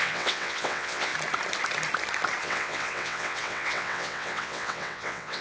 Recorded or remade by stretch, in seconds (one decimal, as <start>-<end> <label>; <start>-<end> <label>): 0.0-1.1 remade; 1.1-2.4 recorded; 2.4-5.4 remade